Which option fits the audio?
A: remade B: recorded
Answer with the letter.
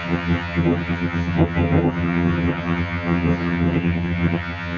A